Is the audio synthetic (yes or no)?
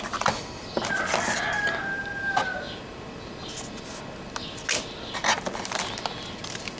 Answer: no